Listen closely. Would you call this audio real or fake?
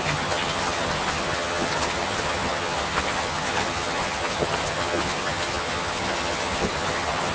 fake